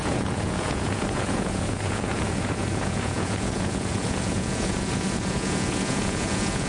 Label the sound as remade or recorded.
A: remade